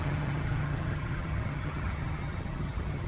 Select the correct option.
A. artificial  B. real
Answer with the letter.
A